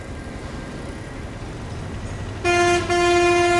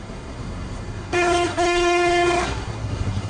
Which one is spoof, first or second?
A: second